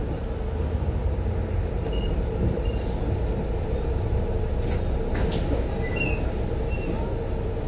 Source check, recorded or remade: recorded